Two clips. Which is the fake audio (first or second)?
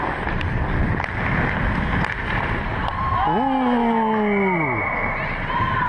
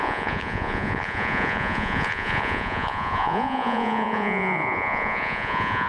second